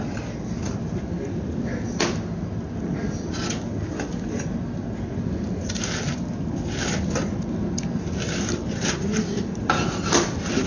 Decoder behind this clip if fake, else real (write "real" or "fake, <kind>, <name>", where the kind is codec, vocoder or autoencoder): real